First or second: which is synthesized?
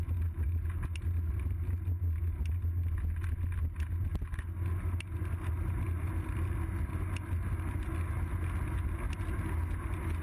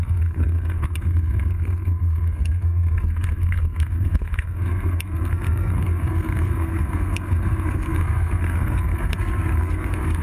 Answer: second